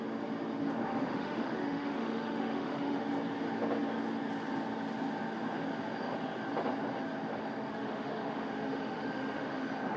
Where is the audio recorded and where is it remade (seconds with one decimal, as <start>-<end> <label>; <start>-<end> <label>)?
0.0-0.9 recorded; 0.9-3.0 remade; 3.0-7.7 recorded; 7.7-9.6 remade; 9.6-10.0 recorded